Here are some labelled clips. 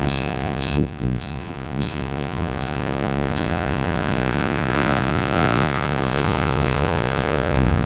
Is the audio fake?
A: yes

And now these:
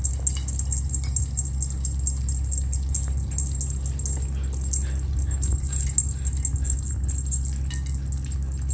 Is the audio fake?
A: no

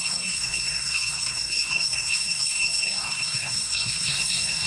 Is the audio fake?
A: yes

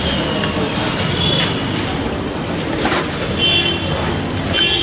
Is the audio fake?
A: no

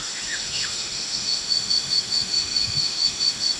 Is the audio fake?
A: yes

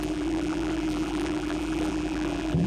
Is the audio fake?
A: yes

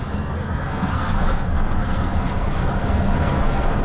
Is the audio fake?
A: yes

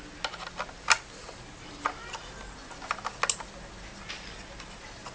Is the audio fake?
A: no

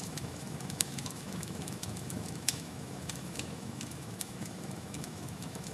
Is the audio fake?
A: yes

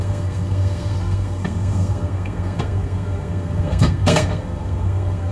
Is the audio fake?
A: yes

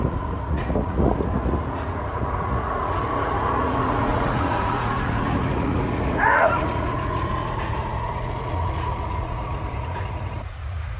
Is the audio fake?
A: yes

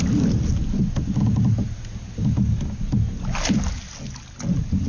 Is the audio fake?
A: no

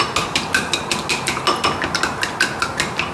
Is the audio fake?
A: no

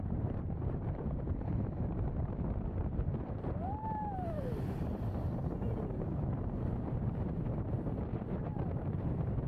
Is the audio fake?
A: yes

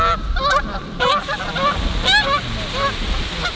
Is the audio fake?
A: no